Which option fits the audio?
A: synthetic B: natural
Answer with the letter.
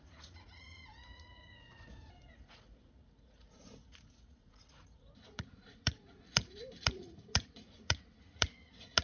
A